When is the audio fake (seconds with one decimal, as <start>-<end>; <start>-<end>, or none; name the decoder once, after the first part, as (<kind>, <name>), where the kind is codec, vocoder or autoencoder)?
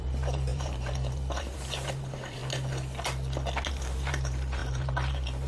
0.0-2.4 (vocoder, BigVGAN v2); 3.7-5.5